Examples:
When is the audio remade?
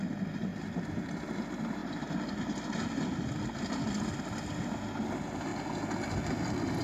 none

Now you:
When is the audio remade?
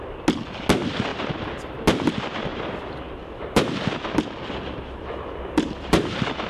1.1-1.7 (vocoder, BigVGAN v2); 2.5-6.1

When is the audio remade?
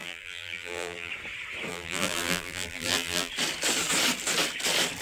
0.0-1.1 (vocoder, BigVGAN v2); 1.7-3.3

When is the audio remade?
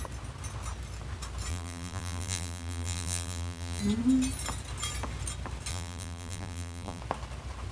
1.5-3.8 (vocoder, BigVGAN v2); 5.7-7.0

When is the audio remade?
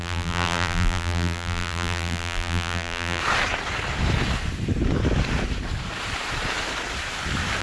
0.0-3.2 (vocoder, BigVGAN v2)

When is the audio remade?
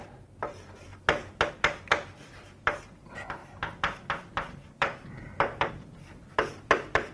0.0-7.1 (vocoder, BigVGAN v2)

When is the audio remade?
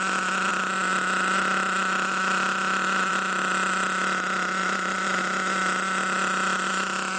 4.6-5.2 (vocoder, BigVGAN v2)